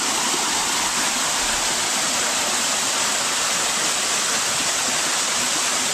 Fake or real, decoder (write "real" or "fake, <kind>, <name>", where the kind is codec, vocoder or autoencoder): real